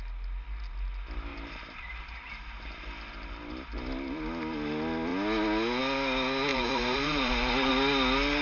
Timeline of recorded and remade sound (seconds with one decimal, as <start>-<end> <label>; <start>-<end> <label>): 0.0-1.3 recorded; 1.3-3.5 remade; 3.5-6.5 recorded; 6.5-7.7 remade; 7.7-8.4 recorded